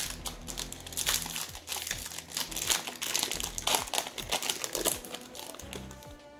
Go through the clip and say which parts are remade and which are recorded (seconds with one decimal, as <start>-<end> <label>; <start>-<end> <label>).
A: 0.0-6.4 recorded